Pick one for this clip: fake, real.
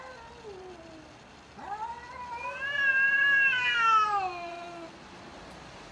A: real